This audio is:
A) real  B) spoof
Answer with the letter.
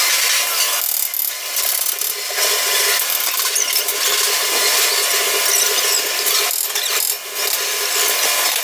B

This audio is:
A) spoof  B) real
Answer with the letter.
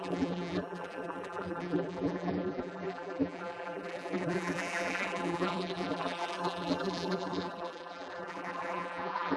A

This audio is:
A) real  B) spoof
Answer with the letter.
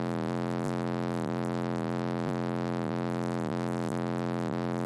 A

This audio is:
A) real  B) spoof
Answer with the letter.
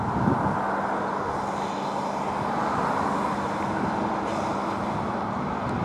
A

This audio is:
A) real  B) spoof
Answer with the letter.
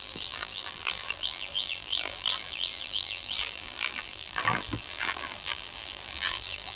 B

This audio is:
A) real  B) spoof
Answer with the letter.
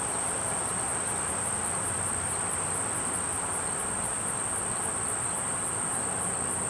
A